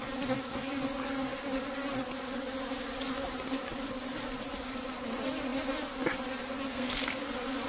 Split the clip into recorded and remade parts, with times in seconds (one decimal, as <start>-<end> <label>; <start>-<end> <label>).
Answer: 0.0-6.7 recorded; 6.7-7.2 remade; 7.2-7.7 recorded